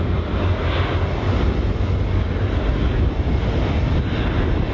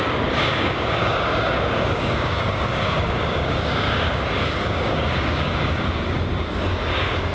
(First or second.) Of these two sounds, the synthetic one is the second